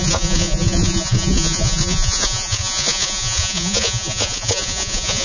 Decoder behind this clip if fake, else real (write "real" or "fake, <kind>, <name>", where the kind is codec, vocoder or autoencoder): fake, vocoder, Vocos